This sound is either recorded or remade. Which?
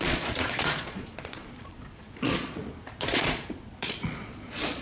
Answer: remade